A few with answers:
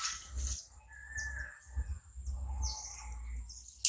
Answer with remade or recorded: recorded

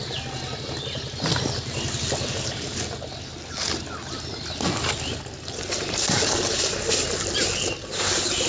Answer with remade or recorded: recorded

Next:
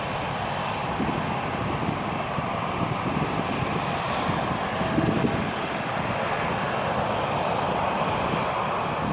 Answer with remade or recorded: recorded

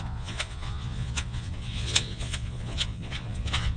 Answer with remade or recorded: remade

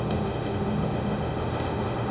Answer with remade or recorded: remade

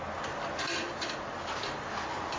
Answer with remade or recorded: recorded